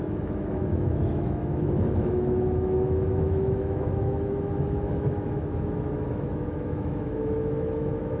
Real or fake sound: fake